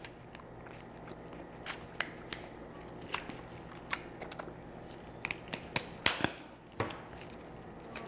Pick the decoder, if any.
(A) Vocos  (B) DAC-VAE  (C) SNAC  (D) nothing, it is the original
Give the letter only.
D